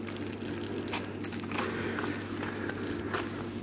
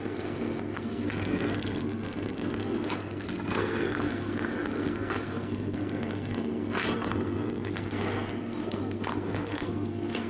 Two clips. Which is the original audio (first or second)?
first